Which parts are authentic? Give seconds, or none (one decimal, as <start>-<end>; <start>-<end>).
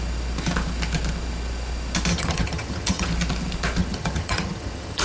0.0-2.1; 3.1-3.8